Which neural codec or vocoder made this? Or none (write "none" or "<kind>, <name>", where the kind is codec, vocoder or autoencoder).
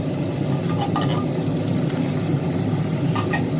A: none